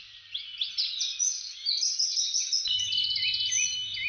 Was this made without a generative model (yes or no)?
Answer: yes